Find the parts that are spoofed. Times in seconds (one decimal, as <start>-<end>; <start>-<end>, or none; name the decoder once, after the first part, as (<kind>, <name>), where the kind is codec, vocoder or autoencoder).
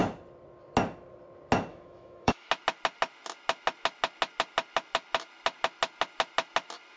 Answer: 1.7-2.5 (autoencoder, DAC-VAE)